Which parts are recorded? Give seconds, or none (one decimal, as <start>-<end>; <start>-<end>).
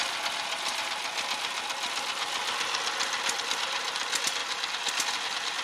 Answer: 0.0-3.4; 4.4-5.1